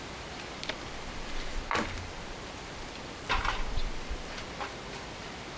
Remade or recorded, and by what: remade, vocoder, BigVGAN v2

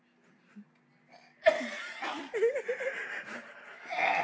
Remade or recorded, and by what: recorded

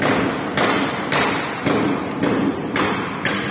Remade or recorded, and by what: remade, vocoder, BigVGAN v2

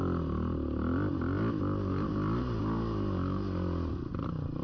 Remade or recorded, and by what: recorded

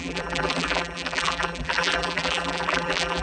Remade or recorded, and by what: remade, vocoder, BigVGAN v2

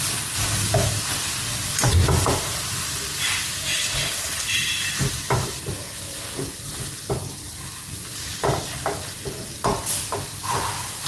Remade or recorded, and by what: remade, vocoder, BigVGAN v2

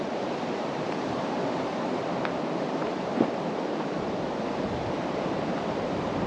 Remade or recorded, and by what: remade, vocoder, BigVGAN v2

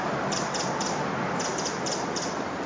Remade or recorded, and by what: remade, vocoder, BigVGAN v2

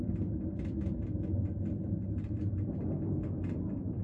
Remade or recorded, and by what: remade, vocoder, BigVGAN v2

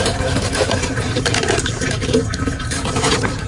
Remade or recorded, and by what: remade, vocoder, BigVGAN v2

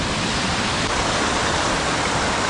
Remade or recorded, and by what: recorded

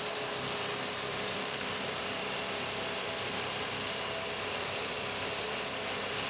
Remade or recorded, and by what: remade, vocoder, BigVGAN v2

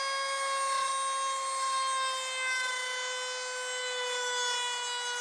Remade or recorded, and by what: recorded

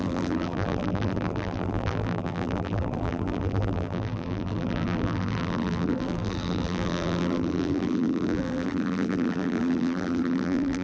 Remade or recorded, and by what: remade, vocoder, BigVGAN v2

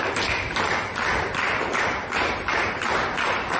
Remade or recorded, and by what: recorded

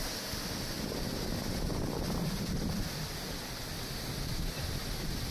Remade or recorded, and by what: recorded